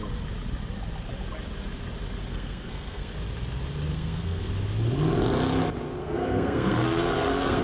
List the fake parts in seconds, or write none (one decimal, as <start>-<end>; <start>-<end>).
2.2-3.1; 3.9-4.5; 6.0-7.6